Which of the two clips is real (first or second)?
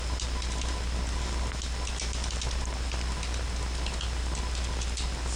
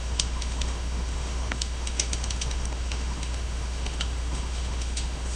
first